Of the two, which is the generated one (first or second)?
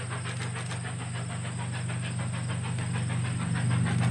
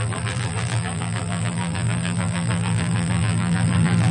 second